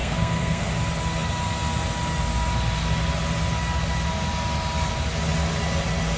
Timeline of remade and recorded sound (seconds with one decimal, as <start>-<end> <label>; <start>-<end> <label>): 0.0-0.7 remade; 0.7-6.2 recorded